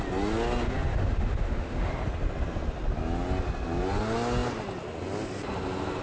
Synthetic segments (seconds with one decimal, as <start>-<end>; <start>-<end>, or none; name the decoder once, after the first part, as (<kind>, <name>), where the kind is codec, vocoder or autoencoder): 0.9-1.9 (autoencoder, DAC-VAE)